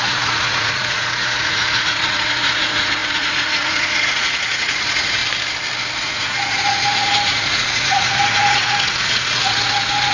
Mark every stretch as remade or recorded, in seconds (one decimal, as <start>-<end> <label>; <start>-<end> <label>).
0.0-5.2 remade; 5.2-6.0 recorded; 6.0-10.1 remade